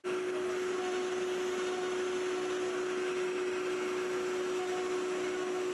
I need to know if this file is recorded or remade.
recorded